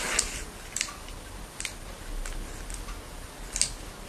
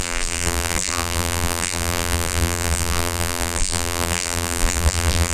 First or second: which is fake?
second